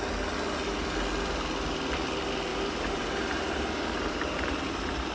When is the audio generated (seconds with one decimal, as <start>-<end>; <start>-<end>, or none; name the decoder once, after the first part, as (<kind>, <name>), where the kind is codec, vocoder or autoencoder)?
2.5-5.1 (vocoder, BigVGAN v2)